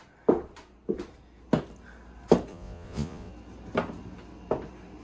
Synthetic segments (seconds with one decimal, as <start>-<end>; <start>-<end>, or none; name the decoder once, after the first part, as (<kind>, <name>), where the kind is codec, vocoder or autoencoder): 2.5-3.3 (vocoder, Vocos)